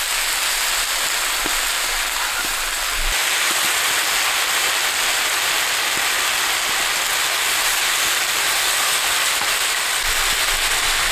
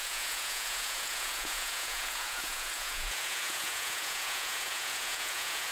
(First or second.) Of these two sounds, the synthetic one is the second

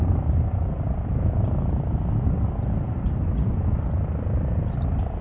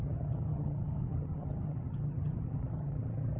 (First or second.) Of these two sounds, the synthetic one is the second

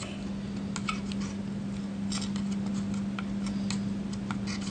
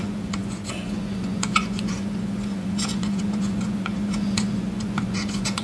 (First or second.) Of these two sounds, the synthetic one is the second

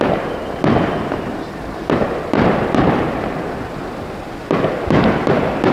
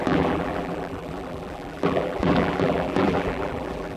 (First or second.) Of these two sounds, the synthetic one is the second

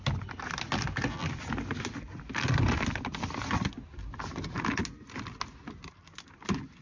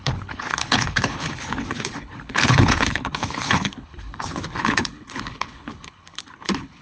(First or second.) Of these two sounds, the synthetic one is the second